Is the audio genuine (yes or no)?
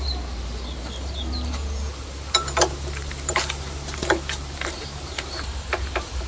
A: no